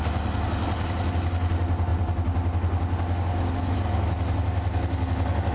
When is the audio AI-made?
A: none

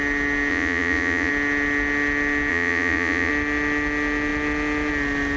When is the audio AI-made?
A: 0.5-1.3 (vocoder, Vocos); 2.5-3.3

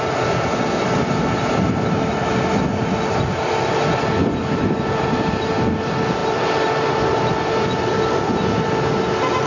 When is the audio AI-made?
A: none

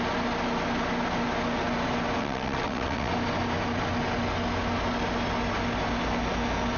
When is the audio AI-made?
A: 2.2-3.1 (vocoder, WaveNeXt)

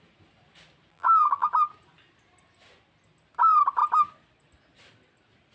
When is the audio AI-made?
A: 0.9-1.5 (vocoder, BigVGAN v2)

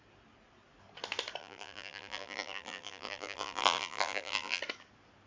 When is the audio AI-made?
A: 1.4-4.6 (vocoder, BigVGAN v2)